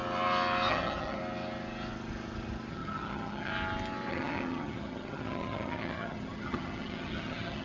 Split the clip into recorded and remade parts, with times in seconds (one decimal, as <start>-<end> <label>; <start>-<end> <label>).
0.0-0.7 recorded; 0.7-1.2 remade; 1.2-2.7 recorded; 2.7-3.5 remade; 3.5-4.1 recorded; 4.1-7.6 remade